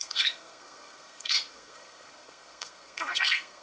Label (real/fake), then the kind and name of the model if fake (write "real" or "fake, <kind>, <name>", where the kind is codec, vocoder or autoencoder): fake, codec, SNAC